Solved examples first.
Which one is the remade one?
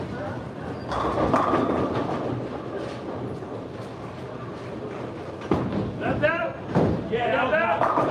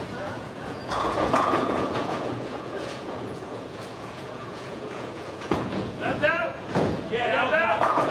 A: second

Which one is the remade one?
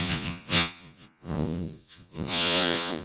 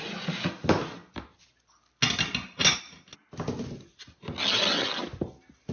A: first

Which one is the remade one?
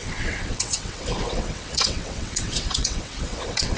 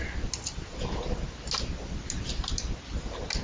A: first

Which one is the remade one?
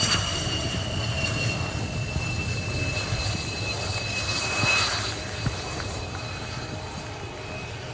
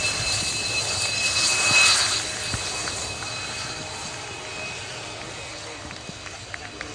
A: first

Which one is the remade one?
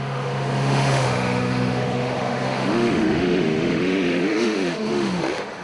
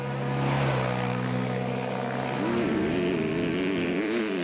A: first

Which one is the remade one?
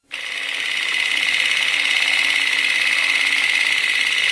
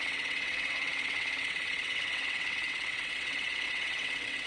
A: second